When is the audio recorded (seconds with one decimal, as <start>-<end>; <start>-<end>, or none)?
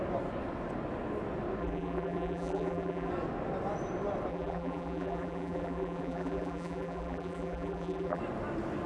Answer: 0.0-1.6; 3.1-4.3; 8.2-8.9